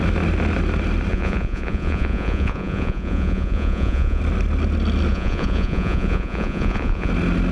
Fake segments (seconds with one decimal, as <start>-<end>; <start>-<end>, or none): 1.1-4.2; 5.1-7.1